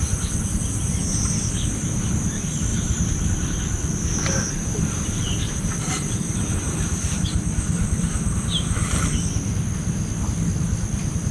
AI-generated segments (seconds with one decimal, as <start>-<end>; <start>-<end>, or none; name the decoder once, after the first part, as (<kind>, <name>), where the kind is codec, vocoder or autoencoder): none